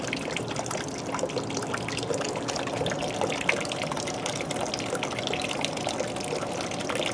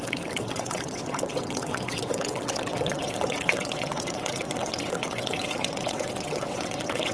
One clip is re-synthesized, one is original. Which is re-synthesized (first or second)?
second